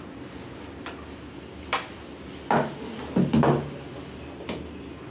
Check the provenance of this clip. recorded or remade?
recorded